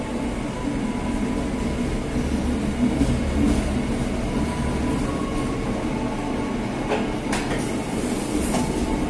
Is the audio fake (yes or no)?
no